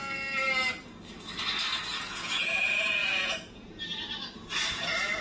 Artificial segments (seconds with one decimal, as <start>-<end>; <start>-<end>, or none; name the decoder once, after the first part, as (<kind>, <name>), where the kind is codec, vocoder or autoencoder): 1.9-3.8 (vocoder, Vocos)

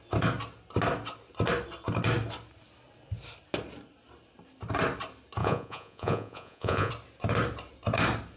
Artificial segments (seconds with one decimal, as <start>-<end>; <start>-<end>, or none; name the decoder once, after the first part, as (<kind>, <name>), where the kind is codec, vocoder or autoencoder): 5.4-6.9 (vocoder, Vocos)

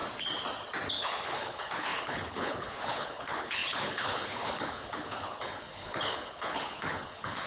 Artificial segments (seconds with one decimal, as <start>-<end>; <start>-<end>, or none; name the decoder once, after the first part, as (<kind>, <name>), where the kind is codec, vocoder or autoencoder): 0.9-7.5 (codec, HILCodec)

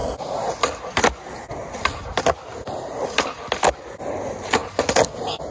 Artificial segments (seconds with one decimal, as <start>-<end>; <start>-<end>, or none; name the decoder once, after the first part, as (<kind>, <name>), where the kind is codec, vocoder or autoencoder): none

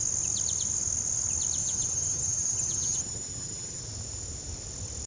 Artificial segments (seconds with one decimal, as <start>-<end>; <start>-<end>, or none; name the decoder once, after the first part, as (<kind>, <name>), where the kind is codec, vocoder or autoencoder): 1.6-3.8 (vocoder, HiFi-GAN)

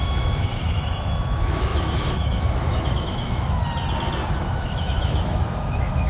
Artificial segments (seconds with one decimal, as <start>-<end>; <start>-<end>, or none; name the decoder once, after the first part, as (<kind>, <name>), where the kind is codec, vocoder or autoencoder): 0.0-3.6 (autoencoder, DAC-VAE); 4.4-6.1

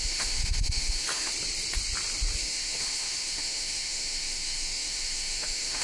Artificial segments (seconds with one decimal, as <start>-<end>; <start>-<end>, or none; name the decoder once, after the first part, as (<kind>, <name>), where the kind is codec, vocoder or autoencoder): 0.0-1.3 (autoencoder, DAC-VAE); 2.4-5.8